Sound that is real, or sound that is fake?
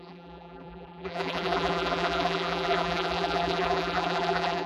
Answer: fake